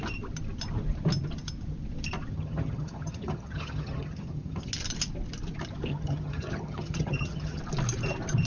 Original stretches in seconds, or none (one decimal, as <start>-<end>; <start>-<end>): 0.0-2.3; 4.7-5.9; 7.6-8.5